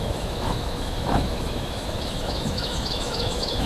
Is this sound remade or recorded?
remade